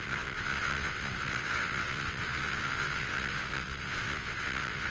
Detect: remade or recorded remade